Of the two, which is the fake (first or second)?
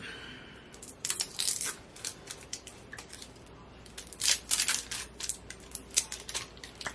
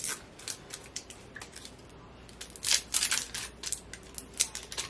first